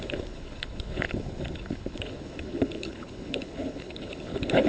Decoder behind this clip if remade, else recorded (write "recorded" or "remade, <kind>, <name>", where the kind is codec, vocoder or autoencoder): remade, codec, HILCodec